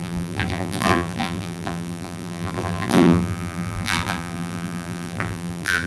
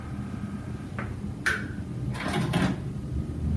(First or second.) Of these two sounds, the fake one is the first